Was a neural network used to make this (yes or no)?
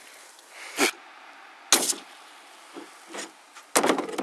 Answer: no